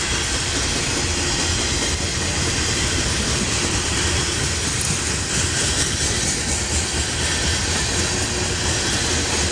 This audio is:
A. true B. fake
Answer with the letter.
A